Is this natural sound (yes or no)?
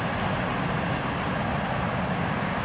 yes